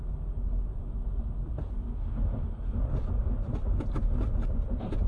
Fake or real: real